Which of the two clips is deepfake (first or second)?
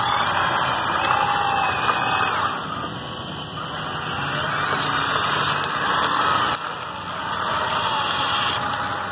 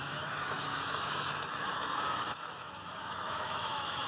second